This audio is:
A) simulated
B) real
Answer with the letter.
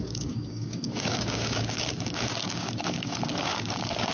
A